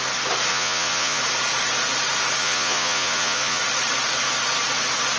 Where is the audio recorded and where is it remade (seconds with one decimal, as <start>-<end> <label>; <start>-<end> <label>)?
0.0-0.5 recorded; 0.5-1.2 remade; 1.2-2.4 recorded; 2.4-3.6 remade; 3.6-5.2 recorded